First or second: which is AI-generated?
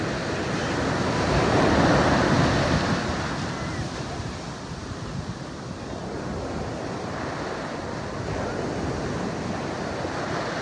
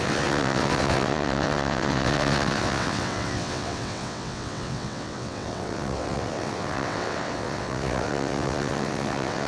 second